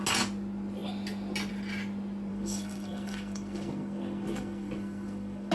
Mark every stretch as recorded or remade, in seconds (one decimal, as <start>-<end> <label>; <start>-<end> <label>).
0.0-2.3 recorded; 2.3-5.5 remade